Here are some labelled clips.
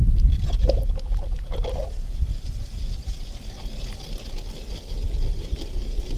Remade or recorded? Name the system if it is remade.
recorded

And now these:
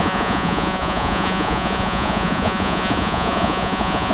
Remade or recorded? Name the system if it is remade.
remade, vocoder, Vocos